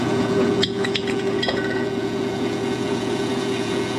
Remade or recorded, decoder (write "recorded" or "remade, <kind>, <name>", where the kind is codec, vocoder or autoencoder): remade, vocoder, Vocos